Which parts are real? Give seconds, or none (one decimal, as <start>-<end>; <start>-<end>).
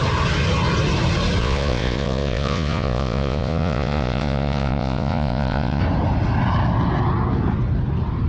0.0-1.4; 5.8-8.3